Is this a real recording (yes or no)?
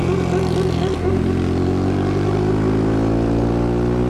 yes